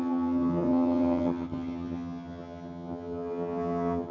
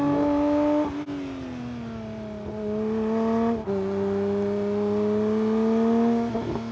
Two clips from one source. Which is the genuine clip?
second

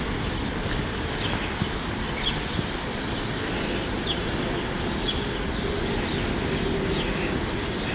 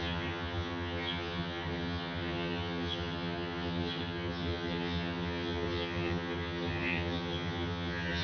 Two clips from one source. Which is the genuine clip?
first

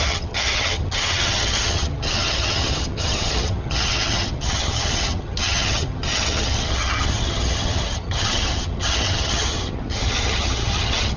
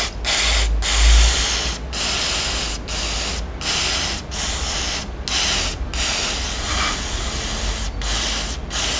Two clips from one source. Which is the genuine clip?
second